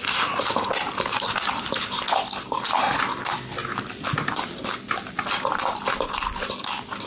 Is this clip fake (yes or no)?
no